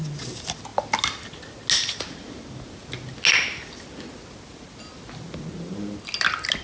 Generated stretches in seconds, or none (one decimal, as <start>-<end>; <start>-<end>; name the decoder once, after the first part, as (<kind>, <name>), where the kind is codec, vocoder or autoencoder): none